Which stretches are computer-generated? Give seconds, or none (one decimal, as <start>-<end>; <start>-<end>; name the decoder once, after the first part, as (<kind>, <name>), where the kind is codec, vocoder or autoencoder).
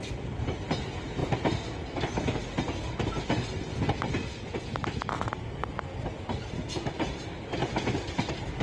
none